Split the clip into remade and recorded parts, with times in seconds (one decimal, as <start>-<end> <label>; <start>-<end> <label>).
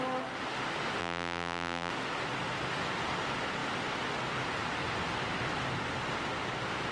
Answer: 0.0-1.0 recorded; 1.0-1.9 remade; 1.9-6.9 recorded